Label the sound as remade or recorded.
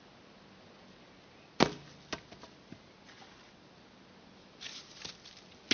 recorded